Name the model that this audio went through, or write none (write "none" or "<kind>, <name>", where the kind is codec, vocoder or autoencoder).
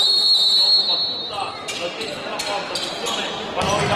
none